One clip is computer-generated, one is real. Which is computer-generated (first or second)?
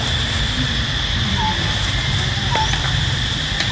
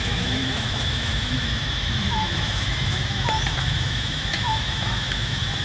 second